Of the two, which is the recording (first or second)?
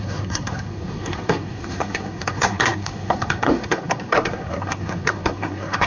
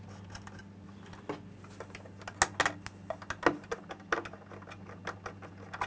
second